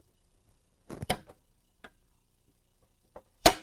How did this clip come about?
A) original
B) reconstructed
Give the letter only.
B